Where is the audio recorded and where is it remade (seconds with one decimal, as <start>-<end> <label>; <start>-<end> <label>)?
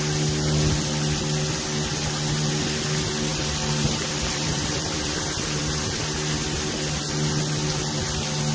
0.0-3.3 recorded; 3.3-5.6 remade; 5.6-8.5 recorded